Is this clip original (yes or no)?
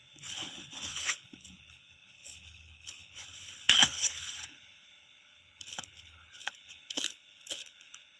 no